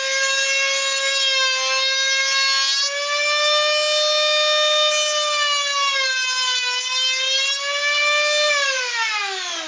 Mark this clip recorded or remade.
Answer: recorded